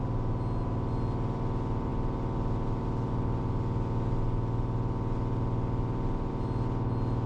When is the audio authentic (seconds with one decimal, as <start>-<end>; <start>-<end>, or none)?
0.0-7.3